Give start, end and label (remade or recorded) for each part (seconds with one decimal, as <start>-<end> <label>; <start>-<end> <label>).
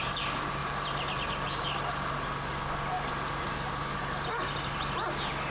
0.0-5.5 recorded